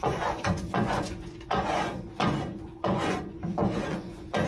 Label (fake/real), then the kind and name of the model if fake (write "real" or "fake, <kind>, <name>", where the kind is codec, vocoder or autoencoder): fake, vocoder, Vocos